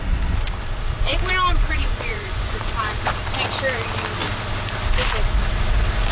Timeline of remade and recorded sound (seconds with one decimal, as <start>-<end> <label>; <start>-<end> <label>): 0.0-1.8 recorded; 1.8-3.1 remade; 3.1-6.1 recorded

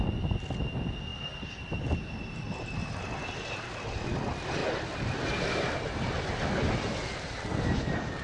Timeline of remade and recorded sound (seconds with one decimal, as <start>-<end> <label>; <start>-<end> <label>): 0.0-8.2 recorded

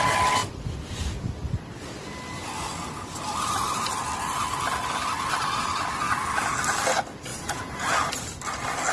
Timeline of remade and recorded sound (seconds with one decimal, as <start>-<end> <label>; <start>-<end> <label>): 0.0-7.3 recorded; 7.3-7.9 remade; 7.9-8.9 recorded

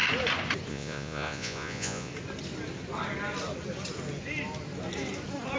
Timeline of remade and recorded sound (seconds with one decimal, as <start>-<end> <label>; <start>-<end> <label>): 0.0-0.7 recorded; 0.7-2.1 remade; 2.1-5.6 recorded

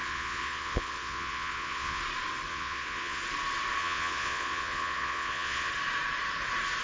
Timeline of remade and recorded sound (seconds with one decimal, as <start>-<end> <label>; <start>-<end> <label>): 0.0-2.0 remade; 2.0-2.5 recorded; 2.5-3.2 remade; 3.2-3.8 recorded; 3.8-5.7 remade; 5.7-6.8 recorded